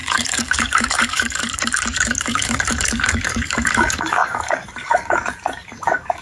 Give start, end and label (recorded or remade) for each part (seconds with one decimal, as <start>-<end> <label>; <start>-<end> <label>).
0.0-6.2 remade